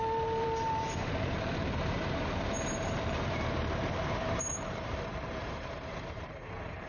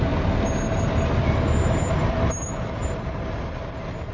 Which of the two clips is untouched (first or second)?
second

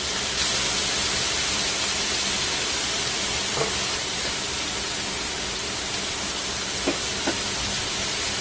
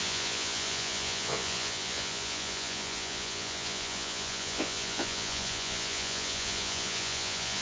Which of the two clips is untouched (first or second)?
first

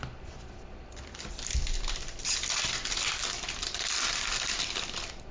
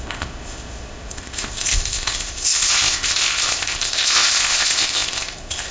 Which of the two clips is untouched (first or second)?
first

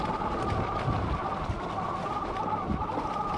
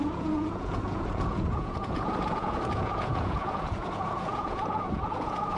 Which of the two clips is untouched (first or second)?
first